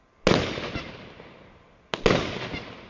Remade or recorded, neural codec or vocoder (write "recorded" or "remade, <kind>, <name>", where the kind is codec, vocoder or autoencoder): recorded